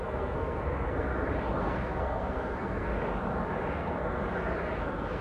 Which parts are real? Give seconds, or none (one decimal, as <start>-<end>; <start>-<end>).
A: 1.1-1.6; 2.9-3.7; 4.2-4.8